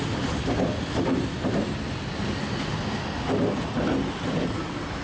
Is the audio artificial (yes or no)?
no